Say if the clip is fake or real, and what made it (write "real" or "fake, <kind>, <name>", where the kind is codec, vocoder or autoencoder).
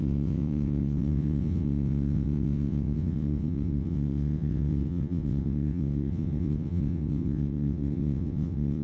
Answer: fake, vocoder, WaveNeXt